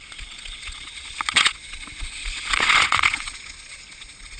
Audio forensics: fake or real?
fake